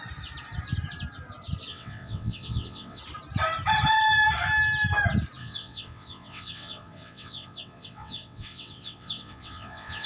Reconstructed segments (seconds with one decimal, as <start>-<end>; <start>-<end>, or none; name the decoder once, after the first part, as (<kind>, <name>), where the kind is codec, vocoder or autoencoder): 1.7-3.0 (vocoder, WaveNeXt); 5.4-10.1